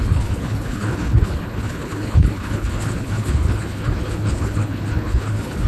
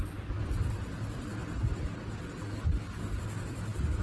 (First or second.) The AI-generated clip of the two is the first